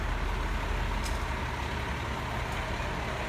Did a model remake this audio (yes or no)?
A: no